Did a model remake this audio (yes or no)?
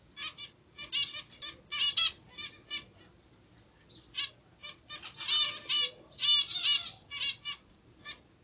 no